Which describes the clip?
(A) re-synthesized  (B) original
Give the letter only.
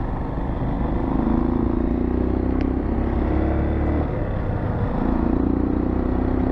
B